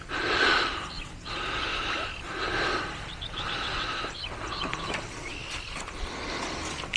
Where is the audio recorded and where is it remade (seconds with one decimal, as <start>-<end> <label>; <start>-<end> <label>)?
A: 0.0-7.0 recorded